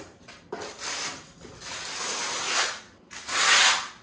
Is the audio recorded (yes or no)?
yes